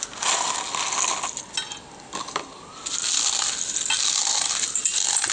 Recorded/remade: recorded